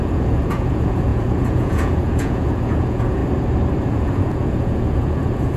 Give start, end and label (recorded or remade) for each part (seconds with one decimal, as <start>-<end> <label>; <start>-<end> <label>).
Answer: 0.0-3.2 remade; 3.2-3.9 recorded; 3.9-5.6 remade